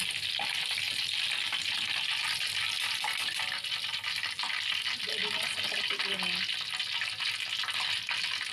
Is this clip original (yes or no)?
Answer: yes